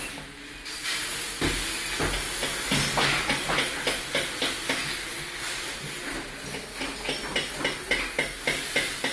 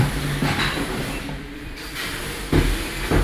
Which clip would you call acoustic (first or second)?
first